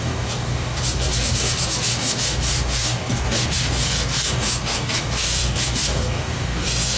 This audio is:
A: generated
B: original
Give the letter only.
A